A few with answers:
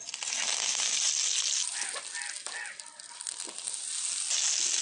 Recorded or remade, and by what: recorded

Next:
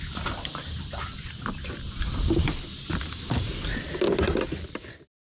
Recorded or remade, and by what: recorded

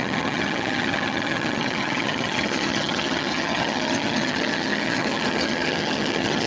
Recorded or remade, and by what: remade, vocoder, HiFi-GAN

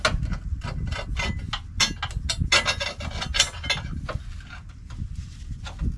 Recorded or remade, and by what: recorded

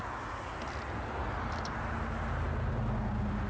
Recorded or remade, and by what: recorded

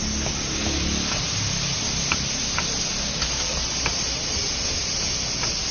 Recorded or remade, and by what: recorded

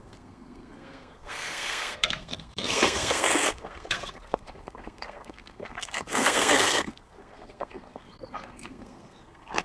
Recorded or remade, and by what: remade, codec, SNAC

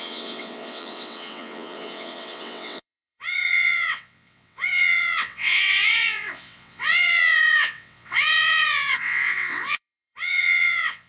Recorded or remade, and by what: remade, vocoder, WaveNeXt